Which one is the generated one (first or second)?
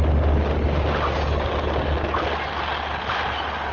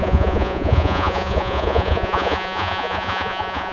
second